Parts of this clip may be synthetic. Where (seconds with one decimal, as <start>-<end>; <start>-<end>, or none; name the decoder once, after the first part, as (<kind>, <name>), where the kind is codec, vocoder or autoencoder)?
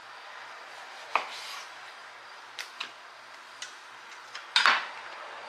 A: none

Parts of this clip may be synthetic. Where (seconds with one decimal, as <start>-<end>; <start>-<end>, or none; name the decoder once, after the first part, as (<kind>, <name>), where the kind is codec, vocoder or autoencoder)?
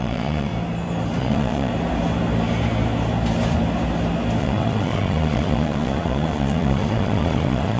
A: 0.0-0.5 (vocoder, Vocos); 1.2-1.7; 4.4-7.8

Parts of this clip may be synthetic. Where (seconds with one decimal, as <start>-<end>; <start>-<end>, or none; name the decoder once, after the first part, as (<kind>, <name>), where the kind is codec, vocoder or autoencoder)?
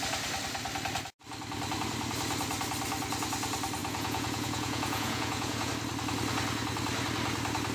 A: 3.8-5.7 (vocoder, Vocos)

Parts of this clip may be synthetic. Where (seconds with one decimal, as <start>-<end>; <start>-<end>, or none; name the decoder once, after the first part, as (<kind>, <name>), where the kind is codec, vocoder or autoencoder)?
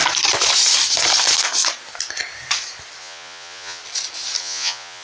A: 3.0-3.8 (vocoder, Vocos); 4.4-5.0